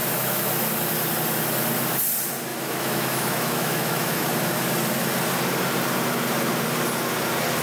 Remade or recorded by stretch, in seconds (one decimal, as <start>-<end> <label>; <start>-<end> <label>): 0.0-0.5 remade; 0.5-2.5 recorded; 2.5-4.2 remade; 4.2-7.6 recorded